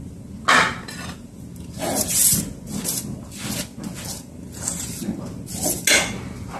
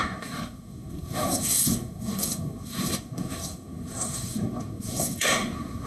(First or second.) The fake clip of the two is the second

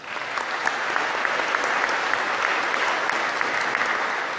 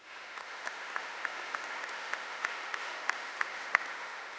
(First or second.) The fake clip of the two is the second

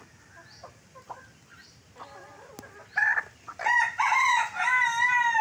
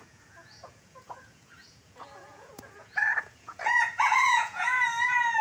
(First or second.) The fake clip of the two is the second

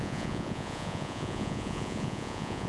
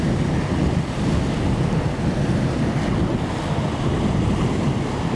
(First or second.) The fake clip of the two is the first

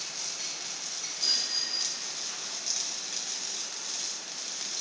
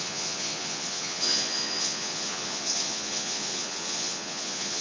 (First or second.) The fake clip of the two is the second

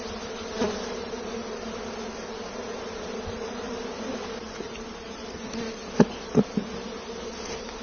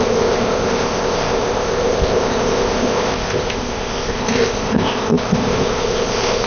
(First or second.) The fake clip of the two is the second